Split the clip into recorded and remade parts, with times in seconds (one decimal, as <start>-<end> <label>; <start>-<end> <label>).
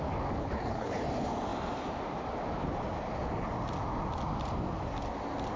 0.0-0.4 recorded; 0.4-1.0 remade; 1.0-5.6 recorded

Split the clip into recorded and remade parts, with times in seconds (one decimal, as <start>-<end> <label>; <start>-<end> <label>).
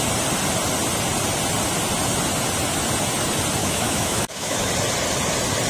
0.0-3.6 recorded; 3.6-4.7 remade; 4.7-5.7 recorded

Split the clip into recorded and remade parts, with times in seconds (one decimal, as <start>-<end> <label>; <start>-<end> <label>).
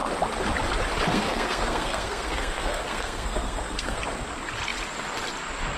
0.0-1.1 recorded; 1.1-4.0 remade; 4.0-5.8 recorded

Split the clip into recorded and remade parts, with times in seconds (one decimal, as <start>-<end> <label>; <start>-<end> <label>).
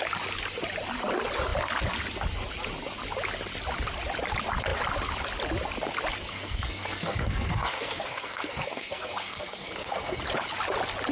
0.0-6.3 recorded; 6.3-10.2 remade; 10.2-11.1 recorded